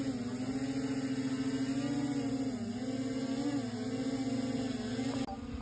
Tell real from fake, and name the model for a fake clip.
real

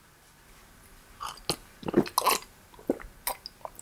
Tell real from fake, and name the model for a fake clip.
real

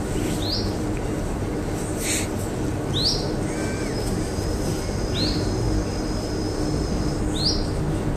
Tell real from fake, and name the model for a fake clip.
real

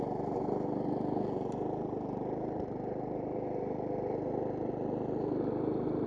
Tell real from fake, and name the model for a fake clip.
real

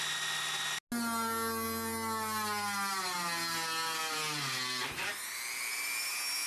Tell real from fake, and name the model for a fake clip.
real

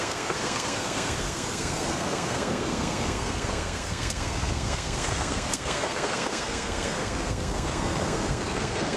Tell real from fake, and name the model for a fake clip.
fake, codec, SNAC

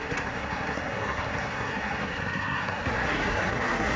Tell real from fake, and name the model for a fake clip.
fake, codec, SNAC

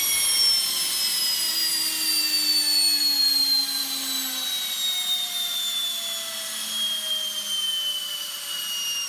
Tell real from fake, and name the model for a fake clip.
real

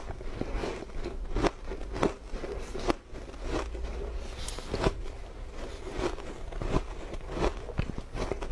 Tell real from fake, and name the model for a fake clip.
real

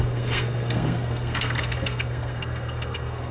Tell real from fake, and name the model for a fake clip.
fake, codec, SNAC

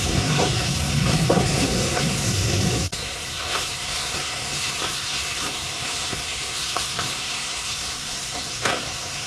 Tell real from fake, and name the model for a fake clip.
fake, codec, SNAC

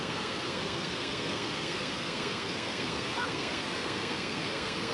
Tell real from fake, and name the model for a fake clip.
fake, codec, SNAC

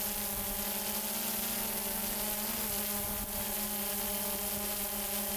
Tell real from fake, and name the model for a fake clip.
real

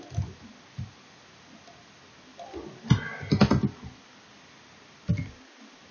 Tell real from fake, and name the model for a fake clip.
real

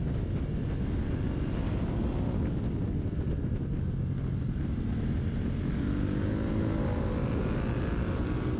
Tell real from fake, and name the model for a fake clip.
real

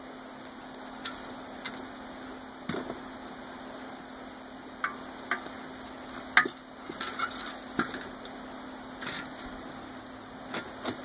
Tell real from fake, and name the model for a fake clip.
real